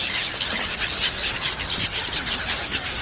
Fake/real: real